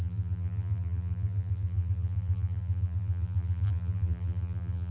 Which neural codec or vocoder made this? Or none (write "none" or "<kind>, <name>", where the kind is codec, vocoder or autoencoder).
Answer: vocoder, BigVGAN v2